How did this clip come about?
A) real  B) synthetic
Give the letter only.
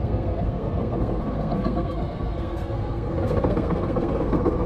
B